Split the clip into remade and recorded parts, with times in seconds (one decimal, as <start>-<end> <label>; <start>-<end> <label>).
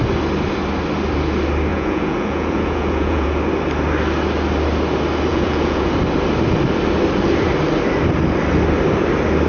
0.0-1.7 recorded; 1.7-3.4 remade; 3.4-5.3 recorded; 5.3-5.9 remade; 5.9-9.5 recorded